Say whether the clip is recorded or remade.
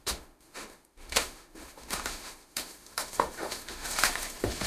remade